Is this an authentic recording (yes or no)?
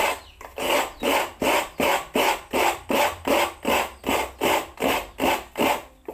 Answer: yes